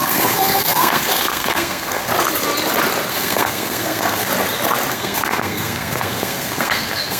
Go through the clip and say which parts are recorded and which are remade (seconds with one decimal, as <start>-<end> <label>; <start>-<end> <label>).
0.0-2.1 remade; 2.1-3.1 recorded; 3.1-4.3 remade; 4.3-4.9 recorded; 4.9-7.2 remade